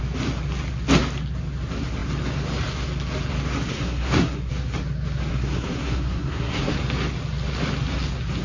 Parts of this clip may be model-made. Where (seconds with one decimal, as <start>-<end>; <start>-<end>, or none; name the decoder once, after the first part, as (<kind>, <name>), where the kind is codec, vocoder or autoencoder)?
3.7-4.5 (codec, SNAC); 5.3-6.7